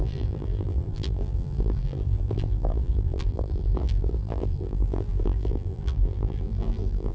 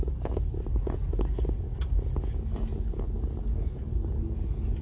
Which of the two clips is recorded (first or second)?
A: second